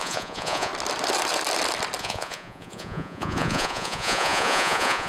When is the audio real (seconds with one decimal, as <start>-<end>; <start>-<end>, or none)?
0.7-2.0